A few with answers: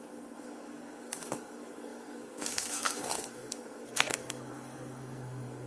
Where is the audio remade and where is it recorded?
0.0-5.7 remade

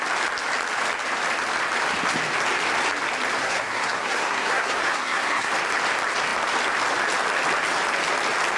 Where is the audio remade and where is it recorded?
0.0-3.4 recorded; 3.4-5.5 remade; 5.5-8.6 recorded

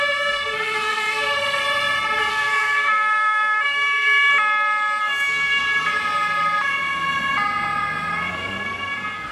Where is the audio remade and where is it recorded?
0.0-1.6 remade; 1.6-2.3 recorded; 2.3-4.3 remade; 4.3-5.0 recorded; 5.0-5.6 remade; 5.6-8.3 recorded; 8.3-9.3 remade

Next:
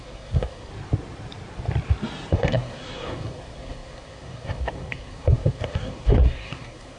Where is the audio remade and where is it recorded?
0.0-0.7 remade; 0.7-2.3 recorded; 2.3-7.0 remade

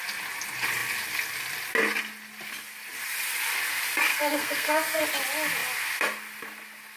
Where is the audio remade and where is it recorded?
0.0-4.1 recorded; 4.1-5.0 remade; 5.0-7.0 recorded

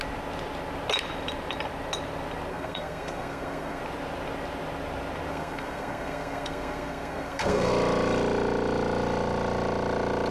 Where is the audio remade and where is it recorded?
0.0-2.5 recorded; 2.5-3.8 remade; 3.8-5.3 recorded; 5.3-7.7 remade; 7.7-10.3 recorded